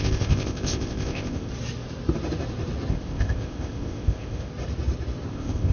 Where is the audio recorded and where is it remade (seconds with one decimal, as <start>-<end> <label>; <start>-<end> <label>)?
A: 0.0-1.5 remade; 1.5-2.9 recorded; 2.9-4.5 remade; 4.5-5.3 recorded; 5.3-5.7 remade